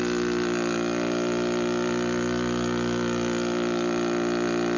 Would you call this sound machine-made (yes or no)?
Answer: no